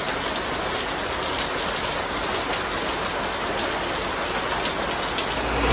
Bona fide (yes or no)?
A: yes